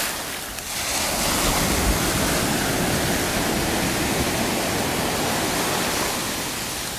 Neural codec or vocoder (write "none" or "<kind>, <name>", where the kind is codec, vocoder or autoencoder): none